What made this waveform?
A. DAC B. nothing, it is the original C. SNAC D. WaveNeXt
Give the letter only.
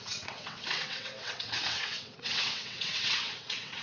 D